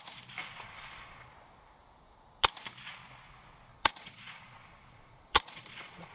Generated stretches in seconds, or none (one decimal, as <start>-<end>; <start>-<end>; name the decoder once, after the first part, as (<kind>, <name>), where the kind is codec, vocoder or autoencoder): 0.4-1.3 (vocoder, Vocos); 3.7-6.1